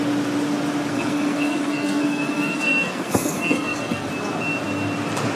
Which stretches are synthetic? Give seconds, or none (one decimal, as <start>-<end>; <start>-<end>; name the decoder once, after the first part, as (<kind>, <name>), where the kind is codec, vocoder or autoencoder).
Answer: 0.9-4.1 (codec, SNAC)